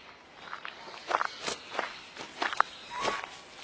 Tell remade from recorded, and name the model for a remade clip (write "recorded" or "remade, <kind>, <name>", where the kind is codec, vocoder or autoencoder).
recorded